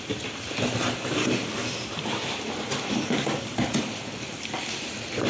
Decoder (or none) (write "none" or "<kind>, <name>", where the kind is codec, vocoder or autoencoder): none